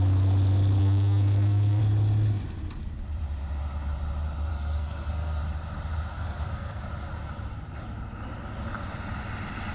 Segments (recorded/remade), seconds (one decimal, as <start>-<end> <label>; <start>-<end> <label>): 0.0-0.8 recorded; 0.8-1.8 remade; 1.8-4.5 recorded; 4.5-5.4 remade; 5.4-6.1 recorded; 6.1-6.8 remade; 6.8-9.7 recorded